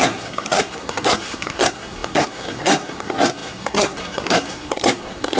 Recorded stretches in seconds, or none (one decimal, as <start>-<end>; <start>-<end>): none